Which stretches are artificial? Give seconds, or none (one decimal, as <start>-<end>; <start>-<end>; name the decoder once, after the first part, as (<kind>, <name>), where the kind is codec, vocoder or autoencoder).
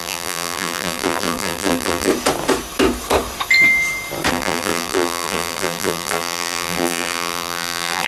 0.0-2.1 (vocoder, BigVGAN v2); 4.3-8.1